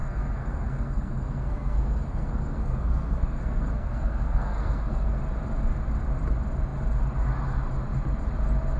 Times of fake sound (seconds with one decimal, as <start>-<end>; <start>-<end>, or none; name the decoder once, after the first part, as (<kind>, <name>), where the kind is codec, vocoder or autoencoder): 0.0-5.2 (codec, SNAC)